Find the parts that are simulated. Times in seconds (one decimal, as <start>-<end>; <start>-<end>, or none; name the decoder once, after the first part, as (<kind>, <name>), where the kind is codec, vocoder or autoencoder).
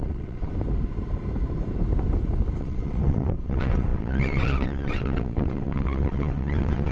0.0-0.5 (vocoder, WaveNeXt); 2.6-6.9